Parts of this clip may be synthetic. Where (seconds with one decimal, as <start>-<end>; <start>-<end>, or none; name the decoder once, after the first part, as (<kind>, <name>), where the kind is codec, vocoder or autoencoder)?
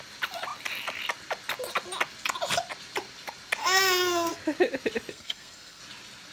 3.6-4.3 (codec, SNAC); 5.1-5.8